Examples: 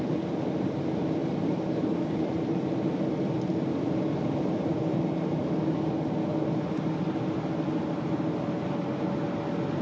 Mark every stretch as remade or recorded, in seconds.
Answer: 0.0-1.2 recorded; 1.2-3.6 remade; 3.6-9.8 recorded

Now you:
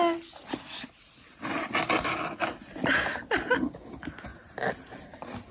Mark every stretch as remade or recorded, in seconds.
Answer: 0.0-2.4 recorded; 2.4-3.5 remade; 3.5-4.3 recorded; 4.3-5.0 remade; 5.0-5.5 recorded

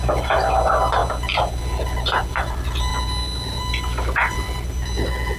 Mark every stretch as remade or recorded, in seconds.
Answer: 0.0-5.4 recorded

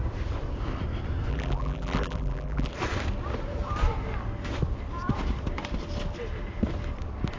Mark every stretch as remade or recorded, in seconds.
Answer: 0.0-1.3 recorded; 1.3-2.7 remade; 2.7-7.4 recorded